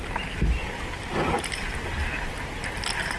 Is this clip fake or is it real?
real